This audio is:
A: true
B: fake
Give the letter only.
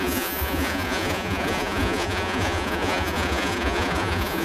B